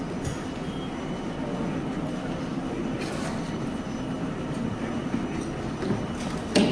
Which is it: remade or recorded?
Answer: recorded